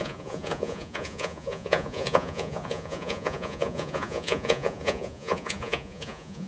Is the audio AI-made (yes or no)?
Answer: yes